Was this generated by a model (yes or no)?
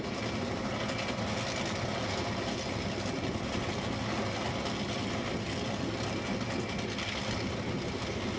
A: no